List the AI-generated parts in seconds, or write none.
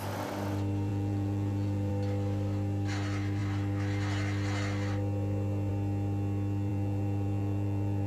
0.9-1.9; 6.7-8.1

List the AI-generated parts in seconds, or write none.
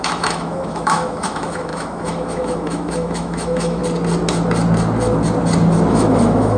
0.0-3.8; 5.9-6.6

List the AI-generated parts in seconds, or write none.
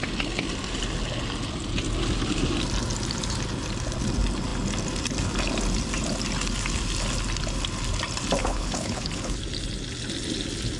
8.4-9.4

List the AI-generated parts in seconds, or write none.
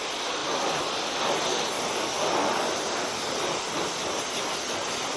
none